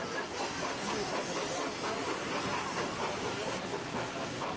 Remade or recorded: recorded